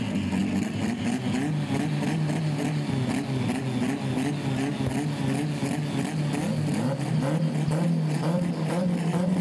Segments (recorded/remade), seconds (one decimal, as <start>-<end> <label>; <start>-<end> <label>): 0.0-9.4 recorded